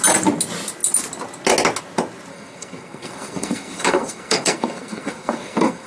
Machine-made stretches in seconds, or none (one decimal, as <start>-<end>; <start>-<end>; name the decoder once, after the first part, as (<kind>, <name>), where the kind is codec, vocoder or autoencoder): 2.3-5.9 (codec, SNAC)